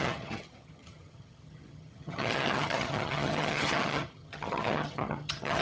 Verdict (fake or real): fake